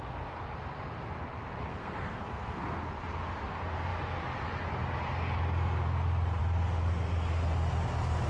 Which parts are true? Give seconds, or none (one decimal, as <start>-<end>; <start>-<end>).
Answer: 0.0-1.7; 2.8-8.3